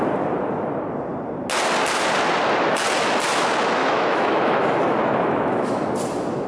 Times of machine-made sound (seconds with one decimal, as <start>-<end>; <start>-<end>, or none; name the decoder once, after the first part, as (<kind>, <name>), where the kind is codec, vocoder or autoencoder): 3.8-5.9 (autoencoder, DAC-VAE)